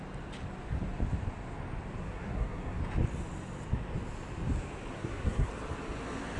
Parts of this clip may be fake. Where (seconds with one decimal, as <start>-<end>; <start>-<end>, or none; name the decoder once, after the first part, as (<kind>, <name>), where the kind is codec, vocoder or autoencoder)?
2.0-2.8 (codec, SNAC); 4.9-5.5